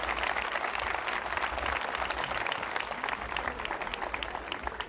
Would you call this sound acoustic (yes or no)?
yes